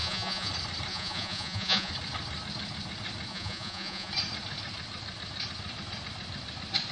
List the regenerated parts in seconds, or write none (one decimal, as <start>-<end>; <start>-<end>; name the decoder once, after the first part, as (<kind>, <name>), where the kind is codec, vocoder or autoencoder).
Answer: 0.0-0.5 (vocoder, Vocos); 0.9-1.9; 3.3-4.1